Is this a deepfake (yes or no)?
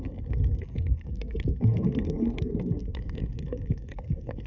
yes